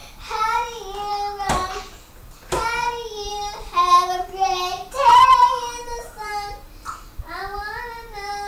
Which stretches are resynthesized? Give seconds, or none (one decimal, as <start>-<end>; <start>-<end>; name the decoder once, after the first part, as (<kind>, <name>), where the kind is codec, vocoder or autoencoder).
3.3-6.3 (vocoder, BigVGAN v2)